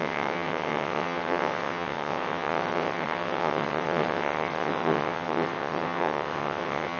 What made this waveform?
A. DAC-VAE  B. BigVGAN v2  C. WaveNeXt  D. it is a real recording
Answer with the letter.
C